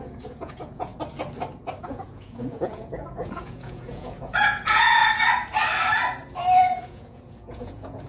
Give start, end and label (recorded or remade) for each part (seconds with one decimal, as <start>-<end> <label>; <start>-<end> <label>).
0.0-0.9 remade; 0.9-1.8 recorded; 1.8-5.0 remade; 5.0-6.6 recorded; 6.6-8.1 remade

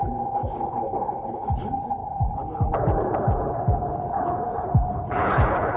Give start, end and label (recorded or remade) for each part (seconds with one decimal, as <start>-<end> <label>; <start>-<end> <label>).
0.0-5.8 remade

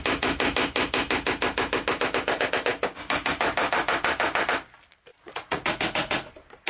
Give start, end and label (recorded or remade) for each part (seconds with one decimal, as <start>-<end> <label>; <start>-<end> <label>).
0.0-5.1 recorded; 5.1-6.3 remade; 6.3-6.7 recorded

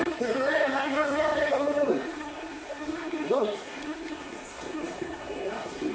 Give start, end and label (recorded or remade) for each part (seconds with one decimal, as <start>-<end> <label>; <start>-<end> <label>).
0.0-5.9 remade

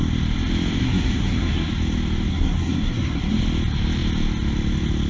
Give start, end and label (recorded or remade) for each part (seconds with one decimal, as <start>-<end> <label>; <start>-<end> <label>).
0.0-0.8 recorded; 0.8-1.7 remade; 1.7-2.3 recorded; 2.3-3.4 remade; 3.4-5.1 recorded